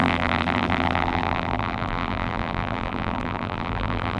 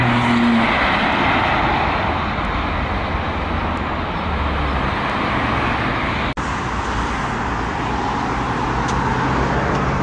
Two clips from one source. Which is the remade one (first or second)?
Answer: first